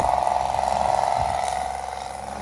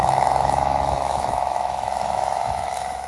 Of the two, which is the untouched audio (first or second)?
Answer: first